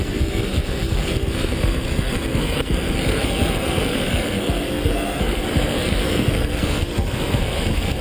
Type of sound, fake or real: fake